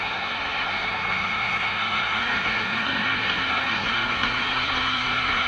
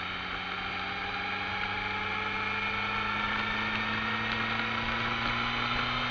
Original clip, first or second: second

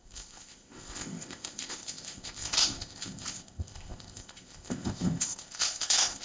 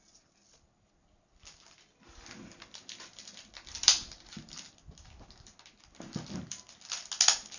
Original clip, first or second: second